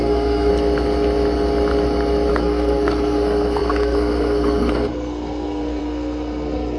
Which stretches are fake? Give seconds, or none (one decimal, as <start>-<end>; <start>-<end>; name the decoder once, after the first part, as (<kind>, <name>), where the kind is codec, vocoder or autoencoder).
0.0-0.5 (codec, SNAC); 2.3-6.8